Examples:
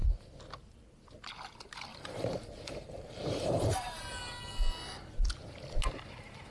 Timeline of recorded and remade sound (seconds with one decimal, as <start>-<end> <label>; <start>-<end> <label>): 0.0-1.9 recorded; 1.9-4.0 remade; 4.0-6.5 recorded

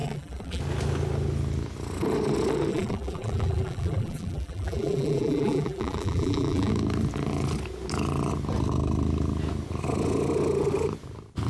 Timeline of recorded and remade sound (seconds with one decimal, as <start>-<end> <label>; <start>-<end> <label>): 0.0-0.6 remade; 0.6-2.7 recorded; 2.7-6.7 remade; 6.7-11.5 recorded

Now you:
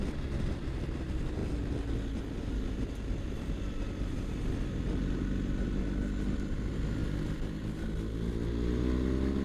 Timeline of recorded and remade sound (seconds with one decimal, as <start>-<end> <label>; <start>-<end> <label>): 0.0-9.4 recorded

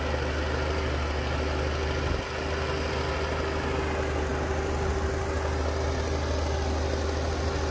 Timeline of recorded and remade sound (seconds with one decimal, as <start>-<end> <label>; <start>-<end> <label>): 0.0-7.7 recorded

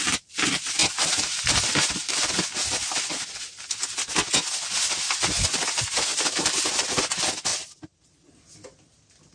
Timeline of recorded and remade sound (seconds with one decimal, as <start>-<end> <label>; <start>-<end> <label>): 0.0-0.8 recorded; 0.8-1.4 remade; 1.4-6.1 recorded; 6.1-6.6 remade; 6.6-7.5 recorded; 7.5-8.3 remade; 8.3-9.3 recorded

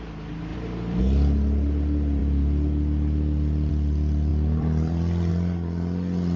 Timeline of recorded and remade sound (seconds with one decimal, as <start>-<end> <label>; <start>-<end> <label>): 0.0-0.5 recorded; 0.5-1.0 remade; 1.0-4.3 recorded; 4.3-5.3 remade; 5.3-6.4 recorded